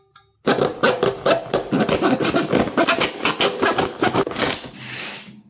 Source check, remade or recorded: recorded